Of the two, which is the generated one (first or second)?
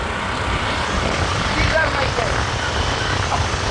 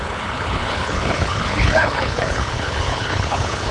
second